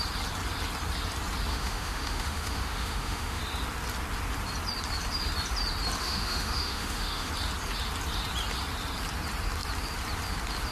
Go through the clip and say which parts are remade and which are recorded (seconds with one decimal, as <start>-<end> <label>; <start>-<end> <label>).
0.0-1.5 recorded; 1.5-3.4 remade; 3.4-6.0 recorded; 6.0-7.3 remade; 7.3-10.7 recorded